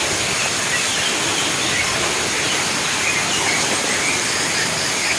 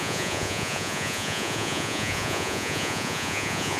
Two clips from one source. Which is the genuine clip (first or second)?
first